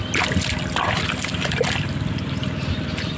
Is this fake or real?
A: real